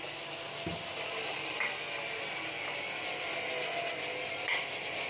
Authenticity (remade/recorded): remade